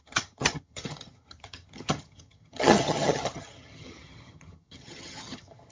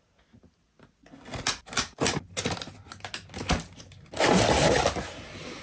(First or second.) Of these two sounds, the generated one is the first